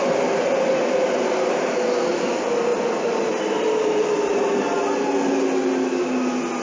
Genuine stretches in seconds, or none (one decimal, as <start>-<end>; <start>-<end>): 0.0-6.6